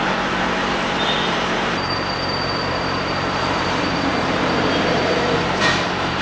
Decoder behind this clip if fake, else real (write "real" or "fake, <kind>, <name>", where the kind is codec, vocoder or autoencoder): fake, vocoder, BigVGAN v2